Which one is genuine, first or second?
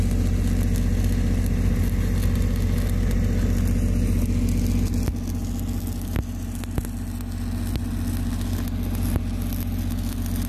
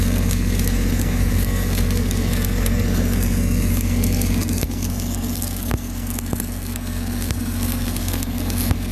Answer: first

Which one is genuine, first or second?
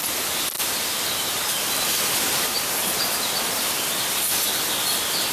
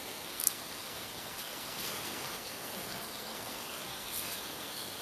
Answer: first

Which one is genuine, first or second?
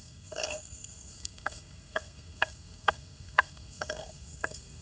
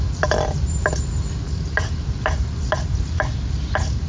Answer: second